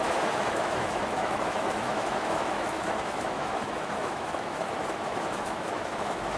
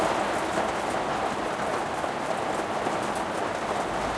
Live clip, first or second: second